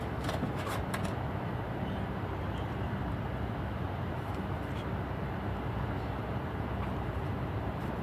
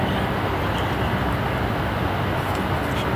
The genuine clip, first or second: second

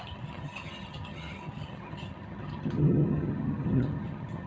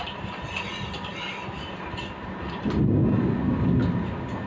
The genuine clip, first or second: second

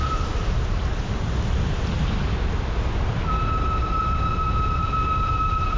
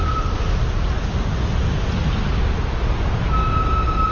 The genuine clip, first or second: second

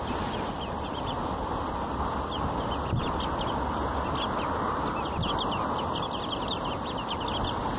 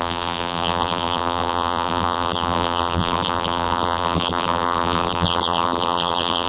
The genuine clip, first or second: first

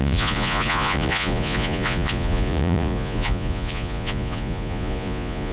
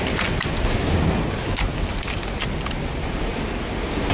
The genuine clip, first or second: second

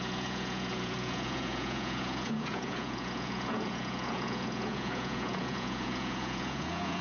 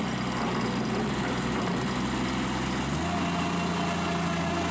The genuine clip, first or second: second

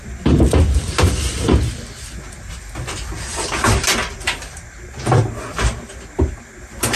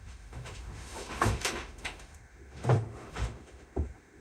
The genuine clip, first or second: first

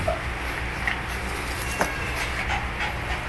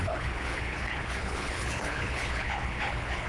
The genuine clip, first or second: first